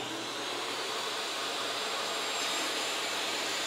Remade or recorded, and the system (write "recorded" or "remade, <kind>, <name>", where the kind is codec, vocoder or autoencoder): remade, vocoder, BigVGAN v2